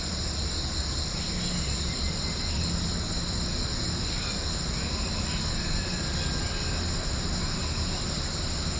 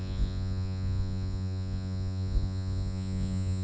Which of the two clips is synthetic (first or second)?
second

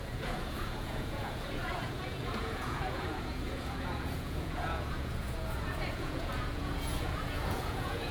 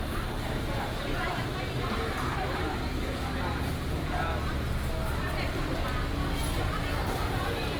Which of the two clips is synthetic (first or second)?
first